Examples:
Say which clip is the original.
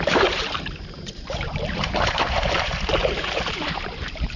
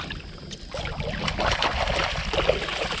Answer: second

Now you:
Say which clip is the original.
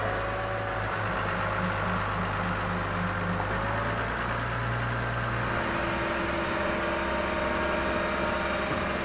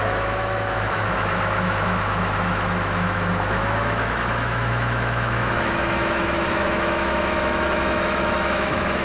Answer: first